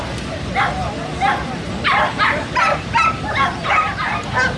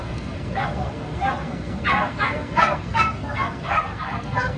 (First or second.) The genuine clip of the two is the first